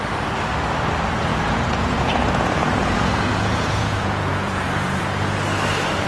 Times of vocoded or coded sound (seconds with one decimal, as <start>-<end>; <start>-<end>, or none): 1.3-5.0